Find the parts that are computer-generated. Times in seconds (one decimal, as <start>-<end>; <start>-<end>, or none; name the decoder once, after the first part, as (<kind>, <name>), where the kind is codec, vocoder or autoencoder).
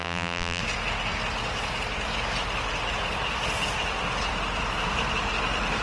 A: 0.0-0.6 (vocoder, BigVGAN v2)